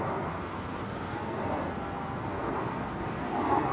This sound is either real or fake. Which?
fake